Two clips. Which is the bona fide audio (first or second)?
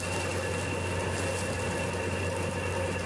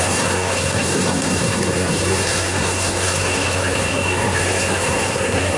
first